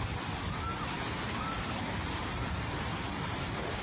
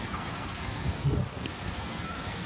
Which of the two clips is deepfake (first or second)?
second